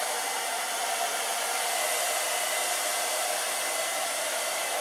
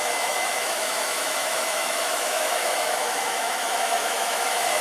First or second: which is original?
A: first